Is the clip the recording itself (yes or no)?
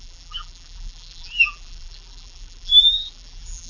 no